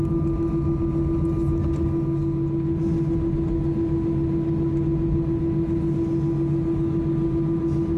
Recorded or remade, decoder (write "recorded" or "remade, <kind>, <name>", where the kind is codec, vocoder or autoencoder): recorded